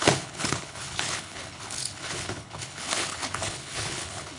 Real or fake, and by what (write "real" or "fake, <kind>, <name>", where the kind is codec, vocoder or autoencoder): fake, codec, HILCodec